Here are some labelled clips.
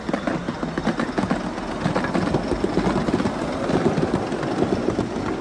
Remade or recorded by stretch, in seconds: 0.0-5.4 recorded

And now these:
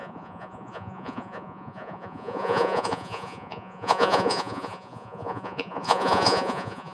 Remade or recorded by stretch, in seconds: 0.0-6.9 remade